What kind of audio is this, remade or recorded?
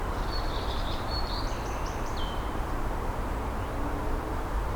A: remade